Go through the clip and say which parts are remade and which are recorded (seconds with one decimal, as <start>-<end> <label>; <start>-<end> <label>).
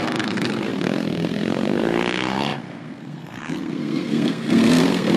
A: 0.0-5.2 remade